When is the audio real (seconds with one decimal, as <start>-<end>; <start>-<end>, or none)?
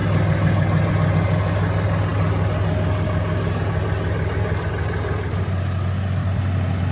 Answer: 0.0-6.9